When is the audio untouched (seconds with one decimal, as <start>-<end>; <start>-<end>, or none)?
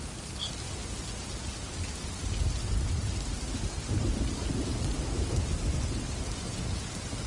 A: 0.0-4.0; 4.7-7.3